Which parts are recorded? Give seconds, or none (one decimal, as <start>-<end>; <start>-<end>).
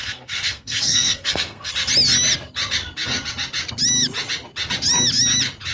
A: 1.7-5.7